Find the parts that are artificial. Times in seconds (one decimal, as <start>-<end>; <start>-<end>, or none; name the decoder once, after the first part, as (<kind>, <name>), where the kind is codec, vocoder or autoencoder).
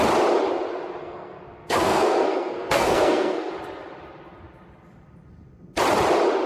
1.0-3.5 (codec, SNAC)